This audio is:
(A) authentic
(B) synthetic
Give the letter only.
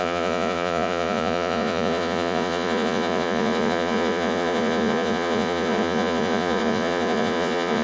B